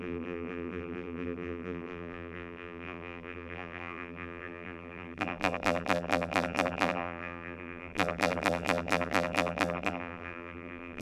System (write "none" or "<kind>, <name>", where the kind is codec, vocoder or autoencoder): vocoder, BigVGAN v2